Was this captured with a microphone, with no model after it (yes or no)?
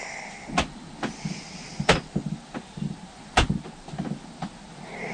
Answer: yes